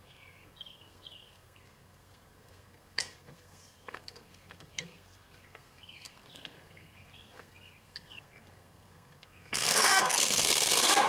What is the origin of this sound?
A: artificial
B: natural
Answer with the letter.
A